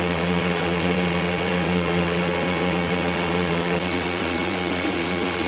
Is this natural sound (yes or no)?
no